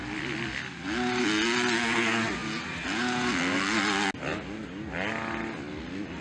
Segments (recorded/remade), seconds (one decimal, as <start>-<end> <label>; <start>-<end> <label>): 0.0-0.6 remade; 0.6-6.2 recorded